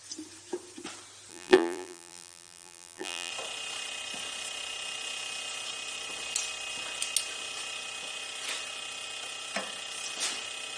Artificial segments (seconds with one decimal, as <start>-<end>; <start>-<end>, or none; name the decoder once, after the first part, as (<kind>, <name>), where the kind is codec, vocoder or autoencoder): 1.3-3.3 (vocoder, BigVGAN v2)